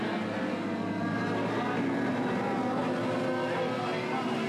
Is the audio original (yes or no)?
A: yes